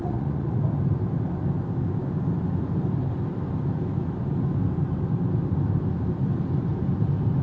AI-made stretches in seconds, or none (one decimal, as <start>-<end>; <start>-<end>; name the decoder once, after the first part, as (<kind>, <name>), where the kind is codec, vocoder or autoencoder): 0.0-0.6 (vocoder, Vocos)